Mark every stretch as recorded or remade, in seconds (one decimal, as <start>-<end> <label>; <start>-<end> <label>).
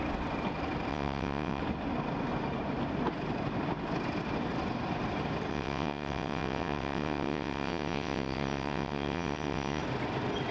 0.0-0.9 recorded; 0.9-1.6 remade; 1.6-5.5 recorded; 5.5-9.8 remade; 9.8-10.5 recorded